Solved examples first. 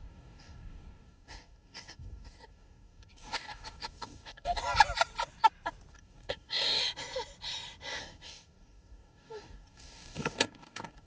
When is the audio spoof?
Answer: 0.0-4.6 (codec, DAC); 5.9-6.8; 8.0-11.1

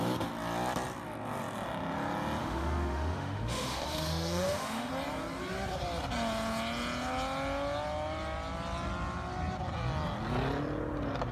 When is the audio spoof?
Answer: 2.4-4.9 (autoencoder, DAC-VAE)

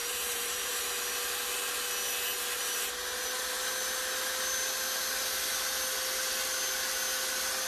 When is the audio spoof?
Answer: 0.0-0.7 (vocoder, BigVGAN v2)

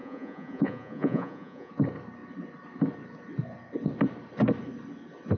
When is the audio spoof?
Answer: 0.0-1.7 (vocoder, Vocos)

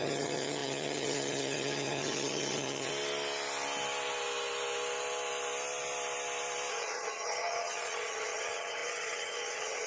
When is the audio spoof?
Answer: 0.0-2.9 (vocoder, HiFi-GAN); 6.7-9.9